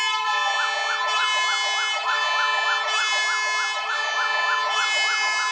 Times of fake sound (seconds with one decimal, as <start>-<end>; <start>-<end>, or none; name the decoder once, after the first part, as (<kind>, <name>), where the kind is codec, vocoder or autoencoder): none